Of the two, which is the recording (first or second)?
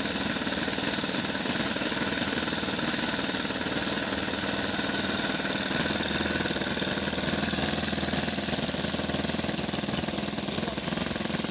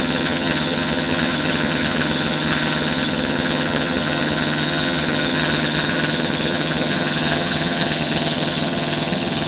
first